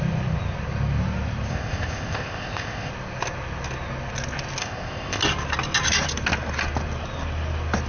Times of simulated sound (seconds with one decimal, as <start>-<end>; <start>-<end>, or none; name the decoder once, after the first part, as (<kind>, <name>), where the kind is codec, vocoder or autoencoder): 1.5-2.9 (codec, ZipCodec); 4.6-5.2